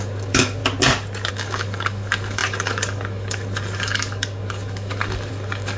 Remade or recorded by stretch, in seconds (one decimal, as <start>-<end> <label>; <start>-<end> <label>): 0.0-0.6 remade; 0.6-1.3 recorded; 1.3-5.8 remade